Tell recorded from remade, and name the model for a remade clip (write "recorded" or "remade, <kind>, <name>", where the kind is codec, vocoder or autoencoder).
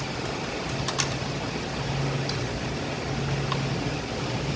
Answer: recorded